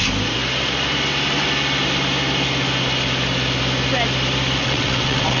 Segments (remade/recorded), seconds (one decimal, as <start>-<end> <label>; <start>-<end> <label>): 0.0-4.6 recorded; 4.6-5.4 remade